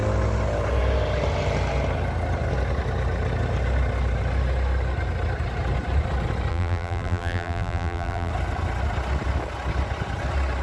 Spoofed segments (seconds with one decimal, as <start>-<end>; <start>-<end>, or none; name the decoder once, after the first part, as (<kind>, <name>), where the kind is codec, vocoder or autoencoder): 6.5-8.3 (vocoder, BigVGAN v2)

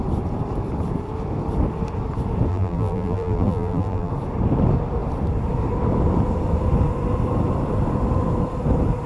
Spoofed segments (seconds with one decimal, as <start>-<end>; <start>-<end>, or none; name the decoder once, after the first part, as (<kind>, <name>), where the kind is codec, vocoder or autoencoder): 2.5-4.1 (vocoder, BigVGAN v2)